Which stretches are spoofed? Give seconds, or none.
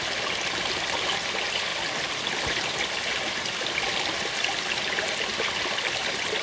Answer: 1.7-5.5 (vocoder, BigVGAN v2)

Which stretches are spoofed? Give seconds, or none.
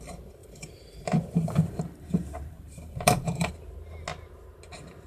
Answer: 0.4-3.5 (vocoder, BigVGAN v2)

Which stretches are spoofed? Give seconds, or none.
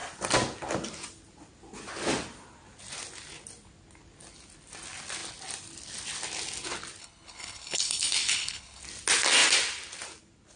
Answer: 7.0-8.8 (codec, HILCodec)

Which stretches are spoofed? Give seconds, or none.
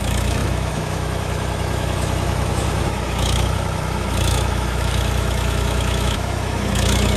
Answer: 0.0-7.2 (autoencoder, DAC-VAE)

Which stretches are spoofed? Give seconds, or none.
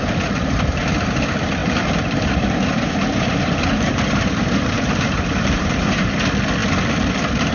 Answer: 1.6-6.1 (vocoder, BigVGAN v2)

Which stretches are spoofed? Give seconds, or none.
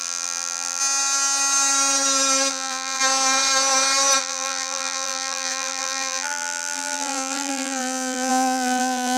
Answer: 0.0-0.8 (vocoder, BigVGAN v2); 2.5-3.0; 4.2-9.2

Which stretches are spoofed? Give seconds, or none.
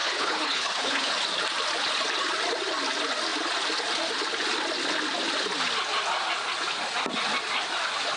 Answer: 0.0-1.1 (codec, HILCodec)